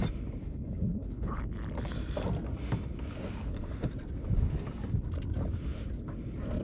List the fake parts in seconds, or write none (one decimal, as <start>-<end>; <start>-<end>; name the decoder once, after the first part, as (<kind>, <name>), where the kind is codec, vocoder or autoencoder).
0.4-1.4 (codec, HILCodec)